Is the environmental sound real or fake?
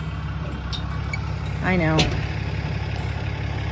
real